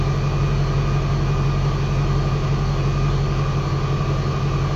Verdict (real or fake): real